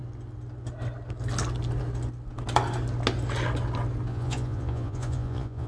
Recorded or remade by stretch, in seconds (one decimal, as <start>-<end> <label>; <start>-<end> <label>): 0.0-4.1 recorded; 4.1-5.7 remade